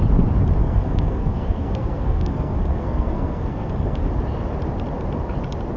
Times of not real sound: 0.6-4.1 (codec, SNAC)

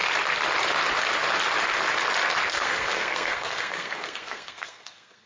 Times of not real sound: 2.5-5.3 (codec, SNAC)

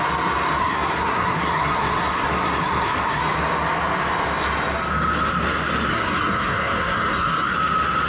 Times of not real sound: 0.6-3.2 (codec, SNAC); 5.9-7.5

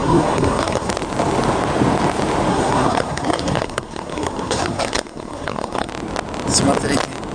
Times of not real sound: 0.0-0.9 (codec, SNAC); 2.5-5.9

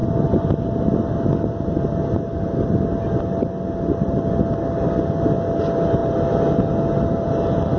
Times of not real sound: none

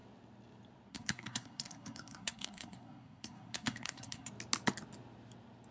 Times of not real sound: 0.9-4.3 (codec, SNAC)

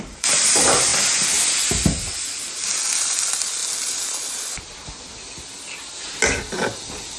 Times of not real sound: none

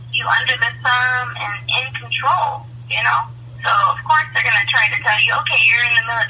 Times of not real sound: none